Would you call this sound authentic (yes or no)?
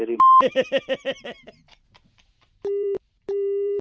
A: no